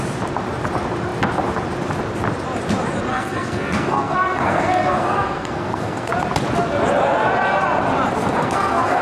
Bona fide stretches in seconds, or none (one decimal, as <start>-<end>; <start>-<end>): 0.0-3.1; 6.1-8.2